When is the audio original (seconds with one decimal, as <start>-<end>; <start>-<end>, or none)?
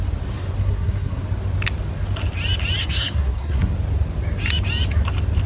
0.0-0.6; 1.2-2.8; 3.7-5.5